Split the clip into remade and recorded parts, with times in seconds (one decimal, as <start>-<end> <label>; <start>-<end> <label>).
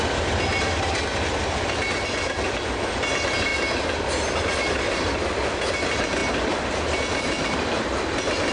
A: 0.0-8.5 recorded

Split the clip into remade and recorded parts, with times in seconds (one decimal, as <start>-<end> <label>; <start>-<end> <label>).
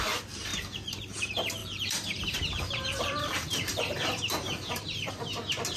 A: 0.0-0.5 recorded; 0.5-1.2 remade; 1.2-1.6 recorded; 1.6-5.1 remade; 5.1-5.8 recorded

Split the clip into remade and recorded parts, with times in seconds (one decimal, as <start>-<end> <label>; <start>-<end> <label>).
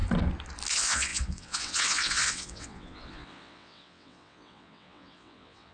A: 0.0-0.7 recorded; 0.7-5.7 remade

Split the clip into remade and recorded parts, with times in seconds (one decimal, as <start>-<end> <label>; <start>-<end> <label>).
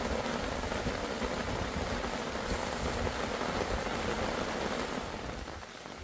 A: 0.0-6.0 recorded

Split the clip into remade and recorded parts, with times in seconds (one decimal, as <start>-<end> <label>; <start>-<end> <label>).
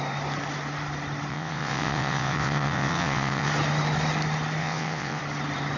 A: 0.0-1.3 recorded; 1.3-3.5 remade; 3.5-4.6 recorded; 4.6-5.2 remade; 5.2-5.8 recorded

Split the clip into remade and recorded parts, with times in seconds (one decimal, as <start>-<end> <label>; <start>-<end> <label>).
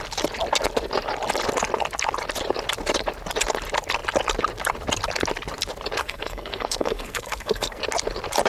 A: 0.0-6.0 recorded; 6.0-7.8 remade; 7.8-8.5 recorded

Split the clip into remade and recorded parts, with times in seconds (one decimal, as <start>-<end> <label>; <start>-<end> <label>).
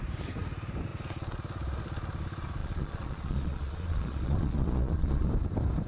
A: 0.0-2.6 recorded; 2.6-5.3 remade; 5.3-5.9 recorded